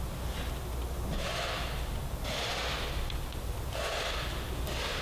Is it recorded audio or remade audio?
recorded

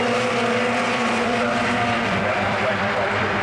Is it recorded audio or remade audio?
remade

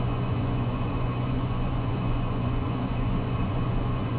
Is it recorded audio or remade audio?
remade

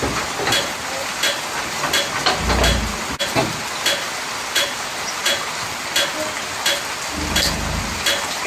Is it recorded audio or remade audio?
recorded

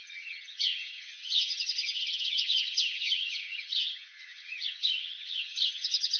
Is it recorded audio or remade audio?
remade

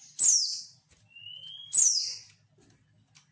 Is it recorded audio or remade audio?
recorded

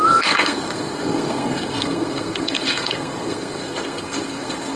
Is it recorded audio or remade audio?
remade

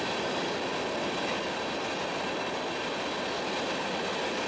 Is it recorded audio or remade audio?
recorded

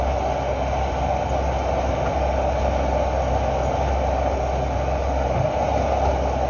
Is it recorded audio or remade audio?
recorded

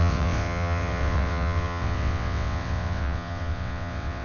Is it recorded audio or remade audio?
remade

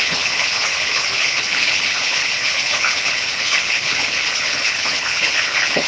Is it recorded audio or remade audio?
remade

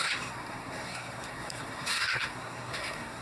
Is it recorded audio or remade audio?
remade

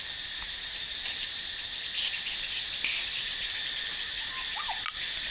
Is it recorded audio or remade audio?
recorded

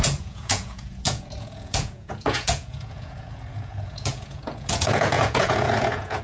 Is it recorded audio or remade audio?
remade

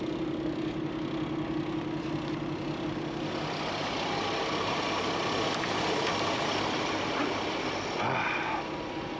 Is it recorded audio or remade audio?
recorded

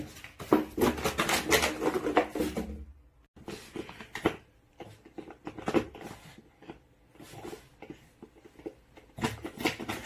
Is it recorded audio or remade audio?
recorded